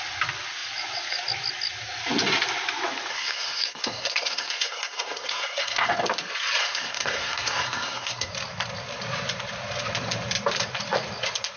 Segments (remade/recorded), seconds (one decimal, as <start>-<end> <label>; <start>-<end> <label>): 0.0-3.1 recorded; 3.1-5.9 remade; 5.9-6.6 recorded; 6.6-8.3 remade; 8.3-11.6 recorded